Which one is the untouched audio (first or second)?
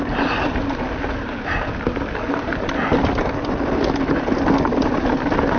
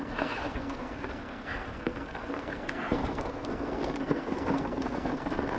first